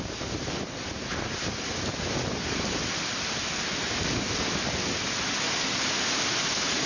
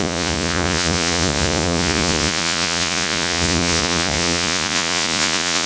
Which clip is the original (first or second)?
first